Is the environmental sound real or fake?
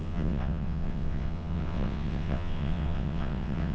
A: fake